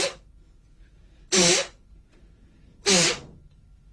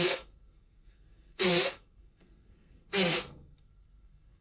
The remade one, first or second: second